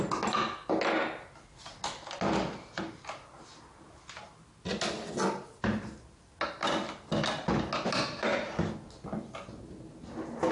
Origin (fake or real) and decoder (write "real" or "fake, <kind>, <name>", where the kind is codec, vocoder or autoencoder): real